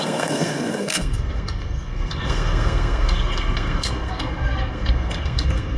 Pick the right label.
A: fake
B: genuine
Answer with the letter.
A